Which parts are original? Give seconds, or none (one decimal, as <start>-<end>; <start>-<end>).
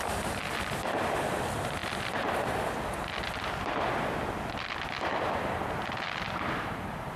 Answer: 1.8-5.5